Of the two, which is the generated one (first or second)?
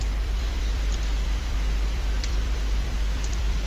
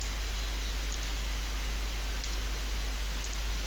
first